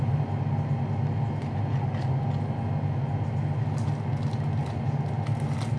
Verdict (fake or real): real